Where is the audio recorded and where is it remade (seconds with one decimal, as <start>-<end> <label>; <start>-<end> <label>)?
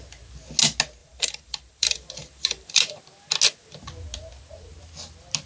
0.0-1.0 recorded; 1.0-3.0 remade; 3.0-5.5 recorded